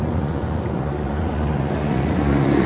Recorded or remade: remade